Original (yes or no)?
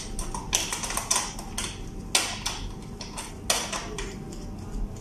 yes